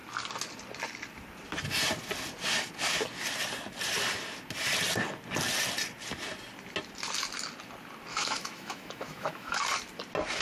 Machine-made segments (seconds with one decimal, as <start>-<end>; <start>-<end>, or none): 8.1-9.6